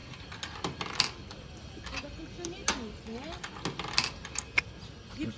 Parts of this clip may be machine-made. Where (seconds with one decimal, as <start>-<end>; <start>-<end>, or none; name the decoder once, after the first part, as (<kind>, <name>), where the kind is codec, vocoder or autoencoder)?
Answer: 2.2-2.6 (vocoder, BigVGAN v2)